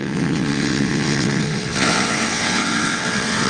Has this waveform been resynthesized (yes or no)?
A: yes